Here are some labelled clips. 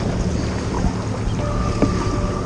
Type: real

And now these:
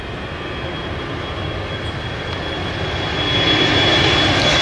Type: real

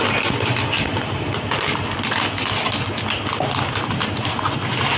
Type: real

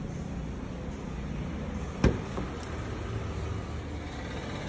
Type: real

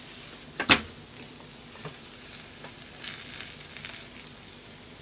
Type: real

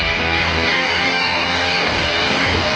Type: fake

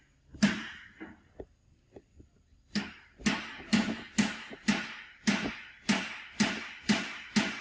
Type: real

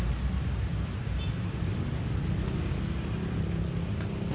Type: real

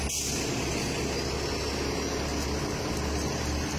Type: real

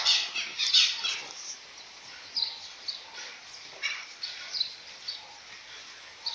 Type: real